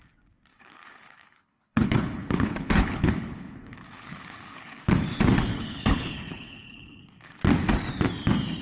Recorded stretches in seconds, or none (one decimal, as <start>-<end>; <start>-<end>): 0.0-0.5; 4.8-5.5; 7.4-8.6